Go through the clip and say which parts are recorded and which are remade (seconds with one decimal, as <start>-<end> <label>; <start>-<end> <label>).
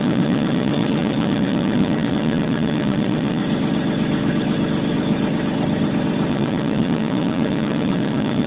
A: 0.0-3.4 remade; 3.4-6.3 recorded; 6.3-8.5 remade